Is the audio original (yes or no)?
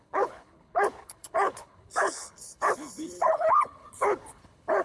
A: no